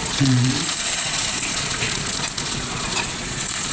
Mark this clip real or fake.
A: fake